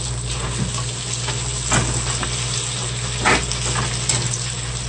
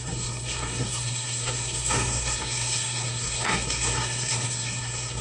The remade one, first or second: second